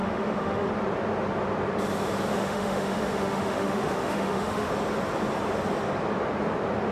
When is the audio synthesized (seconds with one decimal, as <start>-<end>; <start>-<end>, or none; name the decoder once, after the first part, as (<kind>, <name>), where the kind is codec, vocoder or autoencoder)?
0.0-0.7 (autoencoder, DAC-VAE); 2.3-4.7